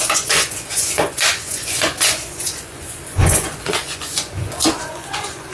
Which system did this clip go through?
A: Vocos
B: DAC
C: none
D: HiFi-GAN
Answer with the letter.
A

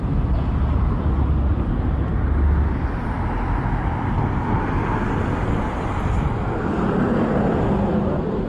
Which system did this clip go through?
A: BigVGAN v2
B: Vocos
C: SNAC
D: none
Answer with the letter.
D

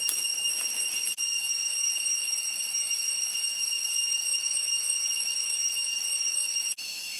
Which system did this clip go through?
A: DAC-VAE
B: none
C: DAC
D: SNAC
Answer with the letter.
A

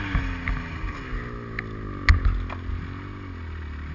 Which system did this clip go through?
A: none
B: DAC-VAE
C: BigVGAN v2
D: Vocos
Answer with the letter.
A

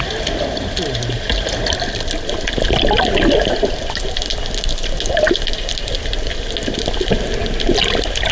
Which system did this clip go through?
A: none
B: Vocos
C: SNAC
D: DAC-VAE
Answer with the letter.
A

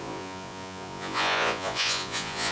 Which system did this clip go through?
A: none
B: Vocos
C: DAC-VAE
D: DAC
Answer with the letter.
B